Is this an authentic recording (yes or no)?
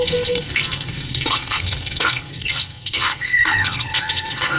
no